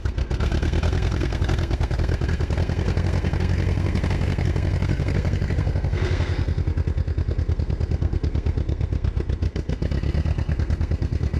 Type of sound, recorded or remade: remade